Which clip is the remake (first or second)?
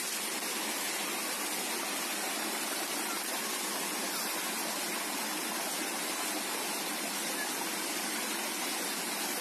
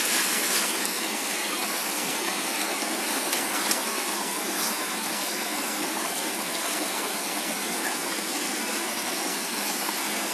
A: second